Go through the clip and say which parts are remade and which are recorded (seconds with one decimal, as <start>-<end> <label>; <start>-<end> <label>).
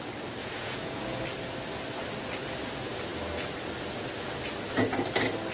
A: 0.0-0.4 recorded; 0.4-1.2 remade; 1.2-5.5 recorded